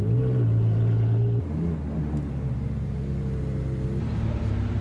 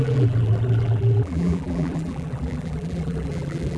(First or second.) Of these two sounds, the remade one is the second